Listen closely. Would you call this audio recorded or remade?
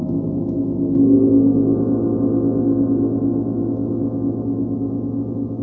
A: remade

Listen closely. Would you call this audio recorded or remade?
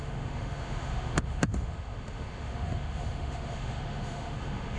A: remade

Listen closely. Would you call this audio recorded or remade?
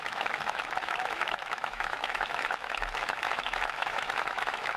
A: remade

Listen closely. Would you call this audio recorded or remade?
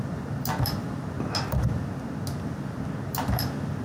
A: recorded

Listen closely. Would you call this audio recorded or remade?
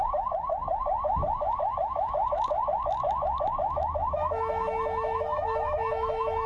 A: remade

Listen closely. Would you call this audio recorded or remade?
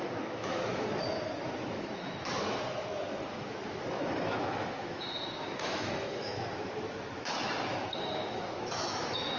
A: remade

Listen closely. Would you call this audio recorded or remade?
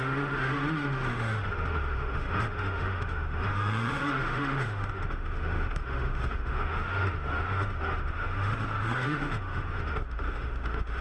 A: remade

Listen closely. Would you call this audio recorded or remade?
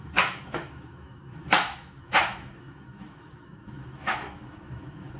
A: remade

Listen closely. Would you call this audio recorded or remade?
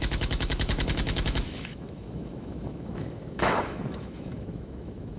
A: remade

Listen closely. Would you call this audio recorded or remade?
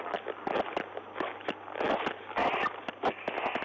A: recorded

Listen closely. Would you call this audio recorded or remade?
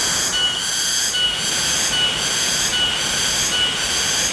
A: recorded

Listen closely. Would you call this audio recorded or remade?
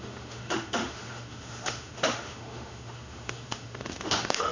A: remade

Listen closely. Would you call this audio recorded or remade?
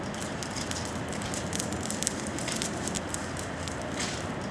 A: recorded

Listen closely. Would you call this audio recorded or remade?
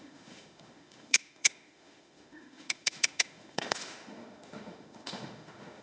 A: remade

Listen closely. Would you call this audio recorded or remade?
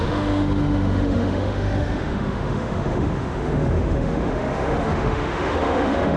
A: remade